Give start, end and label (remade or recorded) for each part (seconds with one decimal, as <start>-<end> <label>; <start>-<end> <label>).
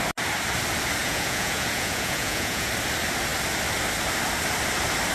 0.0-1.0 recorded; 1.0-2.7 remade; 2.7-5.1 recorded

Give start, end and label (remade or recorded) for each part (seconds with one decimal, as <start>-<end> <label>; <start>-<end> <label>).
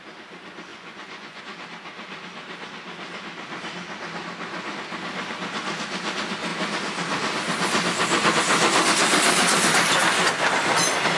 0.0-0.7 recorded; 0.7-1.4 remade; 1.4-11.2 recorded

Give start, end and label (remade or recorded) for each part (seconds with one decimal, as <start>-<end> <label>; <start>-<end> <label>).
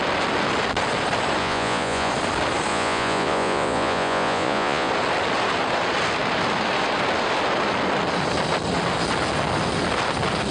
0.0-1.4 recorded; 1.4-2.1 remade; 2.1-2.7 recorded; 2.7-4.9 remade; 4.9-10.5 recorded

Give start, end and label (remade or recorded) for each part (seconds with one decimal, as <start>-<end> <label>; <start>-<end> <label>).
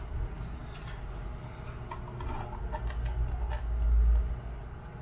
0.0-5.0 recorded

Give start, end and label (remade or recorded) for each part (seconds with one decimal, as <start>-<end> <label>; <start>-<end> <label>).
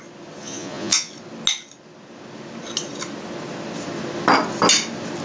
0.0-0.4 recorded; 0.4-1.1 remade; 1.1-5.2 recorded